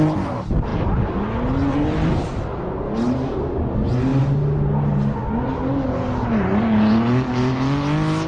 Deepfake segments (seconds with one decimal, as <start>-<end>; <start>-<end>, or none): none

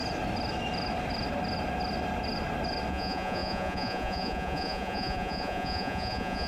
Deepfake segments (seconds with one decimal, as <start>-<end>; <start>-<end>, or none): 2.9-6.5

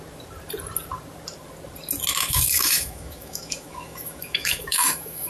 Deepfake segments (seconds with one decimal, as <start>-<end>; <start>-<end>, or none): 2.1-5.3

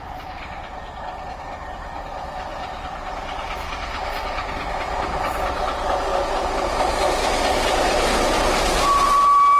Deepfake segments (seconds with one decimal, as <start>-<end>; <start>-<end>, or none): 2.5-4.7

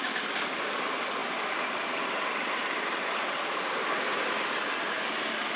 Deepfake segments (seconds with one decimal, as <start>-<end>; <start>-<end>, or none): none

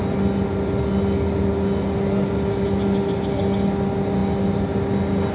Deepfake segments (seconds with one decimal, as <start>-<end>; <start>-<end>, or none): none

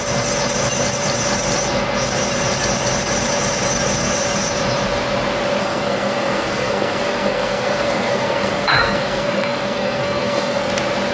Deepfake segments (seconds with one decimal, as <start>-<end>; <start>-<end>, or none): 5.6-10.7

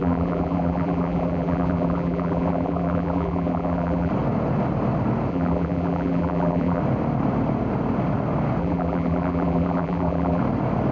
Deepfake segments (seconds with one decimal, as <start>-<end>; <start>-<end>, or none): 0.0-4.1; 5.3-6.8; 8.6-10.4